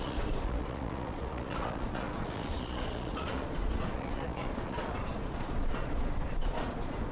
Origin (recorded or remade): remade